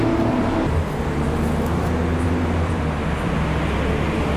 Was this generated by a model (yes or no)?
no